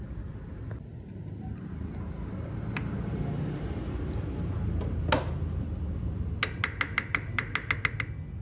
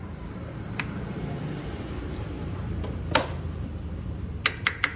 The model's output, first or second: second